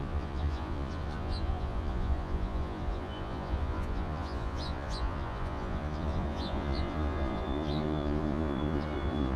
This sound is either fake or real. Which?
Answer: fake